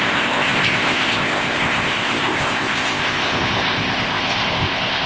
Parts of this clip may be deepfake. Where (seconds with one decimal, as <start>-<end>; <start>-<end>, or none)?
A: 0.0-5.1